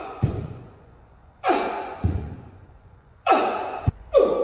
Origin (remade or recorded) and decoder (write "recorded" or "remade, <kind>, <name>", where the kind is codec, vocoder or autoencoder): remade, vocoder, Vocos